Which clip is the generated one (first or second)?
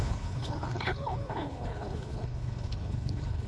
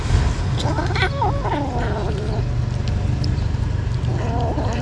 first